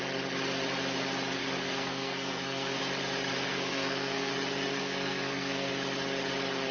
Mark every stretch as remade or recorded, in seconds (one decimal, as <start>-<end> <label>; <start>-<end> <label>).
0.0-1.4 recorded; 1.4-2.8 remade; 2.8-3.5 recorded; 3.5-4.3 remade; 4.3-4.8 recorded; 4.8-5.7 remade; 5.7-6.7 recorded